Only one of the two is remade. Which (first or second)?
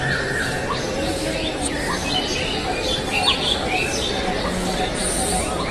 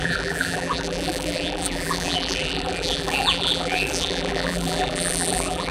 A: second